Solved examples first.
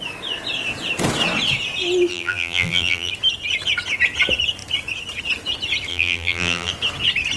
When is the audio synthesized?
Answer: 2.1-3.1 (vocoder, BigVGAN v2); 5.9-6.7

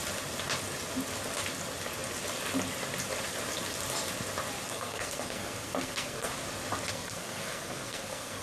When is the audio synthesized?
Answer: 4.7-6.3 (codec, SNAC); 6.9-8.4

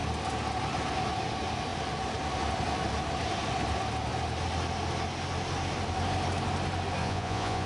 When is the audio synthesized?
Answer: 7.0-7.7 (vocoder, Vocos)